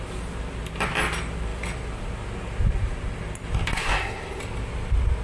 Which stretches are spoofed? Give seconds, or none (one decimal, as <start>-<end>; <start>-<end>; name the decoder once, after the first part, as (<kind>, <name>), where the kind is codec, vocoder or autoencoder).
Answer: 3.8-4.4 (codec, SNAC)